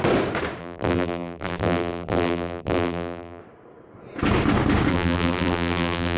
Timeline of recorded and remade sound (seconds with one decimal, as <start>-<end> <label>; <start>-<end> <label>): 0.0-0.6 recorded; 0.6-3.4 remade; 3.4-4.9 recorded; 4.9-6.2 remade